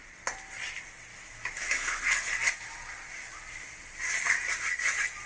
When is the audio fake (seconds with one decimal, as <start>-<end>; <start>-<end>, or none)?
1.1-2.0